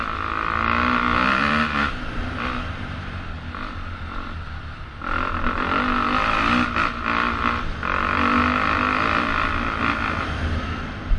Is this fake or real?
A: real